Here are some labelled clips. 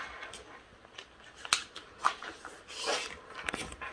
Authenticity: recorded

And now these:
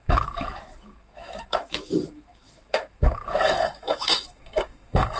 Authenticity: remade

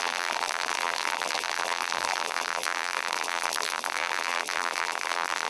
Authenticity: remade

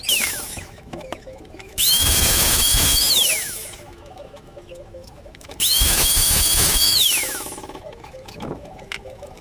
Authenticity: remade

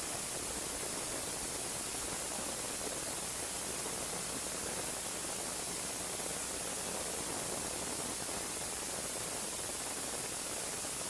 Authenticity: recorded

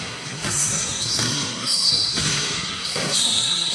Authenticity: remade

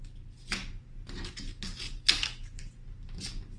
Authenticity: recorded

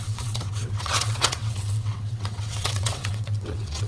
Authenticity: remade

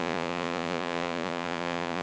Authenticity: remade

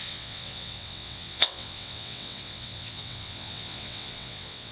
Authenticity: remade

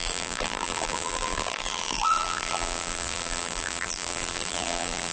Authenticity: remade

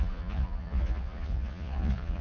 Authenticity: remade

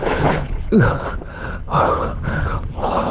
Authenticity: remade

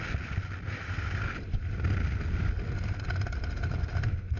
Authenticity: recorded